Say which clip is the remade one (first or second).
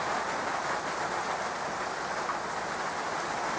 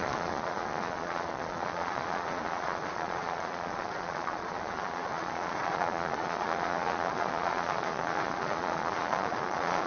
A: second